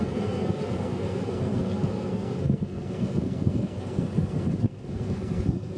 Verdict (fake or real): fake